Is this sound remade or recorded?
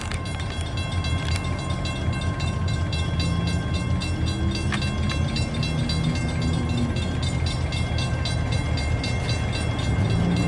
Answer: recorded